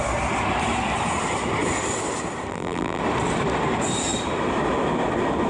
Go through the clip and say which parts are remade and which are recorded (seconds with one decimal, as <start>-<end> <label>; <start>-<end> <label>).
0.0-2.5 recorded; 2.5-3.0 remade; 3.0-5.5 recorded